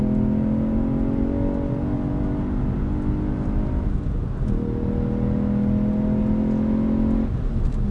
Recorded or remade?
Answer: recorded